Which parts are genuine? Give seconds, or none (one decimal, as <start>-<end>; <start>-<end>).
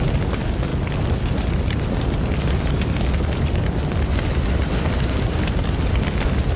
0.0-6.6